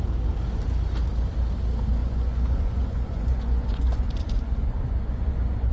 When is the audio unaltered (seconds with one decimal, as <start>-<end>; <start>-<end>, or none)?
0.0-2.0

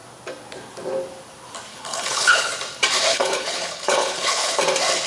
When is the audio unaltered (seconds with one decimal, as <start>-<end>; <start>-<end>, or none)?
0.0-1.7; 2.5-3.1; 4.5-5.1

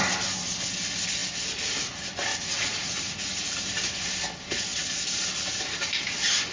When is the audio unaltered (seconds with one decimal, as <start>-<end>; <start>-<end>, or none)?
0.0-2.3; 3.6-6.5

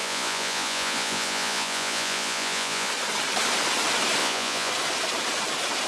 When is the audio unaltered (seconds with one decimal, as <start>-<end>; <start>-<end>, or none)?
2.9-4.2; 4.7-5.9

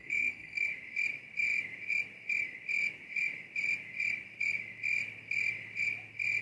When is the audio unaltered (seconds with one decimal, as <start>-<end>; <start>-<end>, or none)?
0.7-6.4